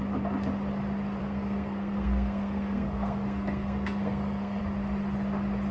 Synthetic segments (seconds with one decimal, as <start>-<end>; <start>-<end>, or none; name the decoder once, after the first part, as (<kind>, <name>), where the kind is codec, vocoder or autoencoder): 1.2-4.6 (codec, SNAC)